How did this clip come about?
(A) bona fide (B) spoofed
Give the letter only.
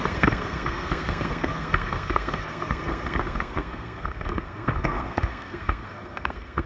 B